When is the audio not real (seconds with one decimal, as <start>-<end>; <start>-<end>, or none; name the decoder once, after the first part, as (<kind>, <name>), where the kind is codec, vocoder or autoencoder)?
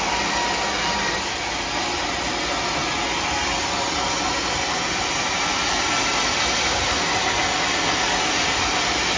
none